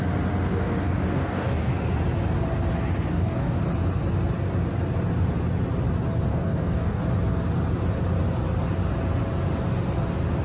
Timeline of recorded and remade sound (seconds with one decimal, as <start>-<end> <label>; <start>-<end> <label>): 0.0-0.5 recorded; 0.5-1.7 remade; 1.7-3.1 recorded; 3.1-3.6 remade; 3.6-6.3 recorded; 6.3-7.0 remade; 7.0-10.4 recorded